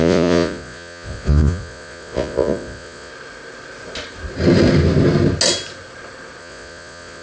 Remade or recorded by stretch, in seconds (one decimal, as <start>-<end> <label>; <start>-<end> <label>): 0.0-3.1 remade; 3.1-6.4 recorded; 6.4-7.2 remade